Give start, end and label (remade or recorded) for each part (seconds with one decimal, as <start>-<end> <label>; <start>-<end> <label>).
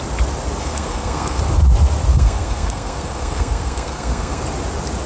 0.0-0.6 recorded; 0.6-1.4 remade; 1.4-2.1 recorded; 2.1-4.4 remade; 4.4-5.1 recorded